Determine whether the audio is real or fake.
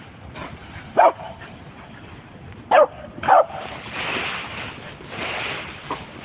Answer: real